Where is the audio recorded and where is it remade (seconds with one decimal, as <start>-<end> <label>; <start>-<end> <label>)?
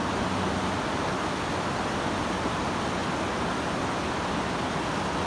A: 0.0-5.3 recorded